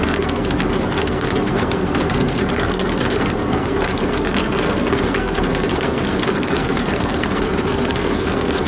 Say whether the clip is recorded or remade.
remade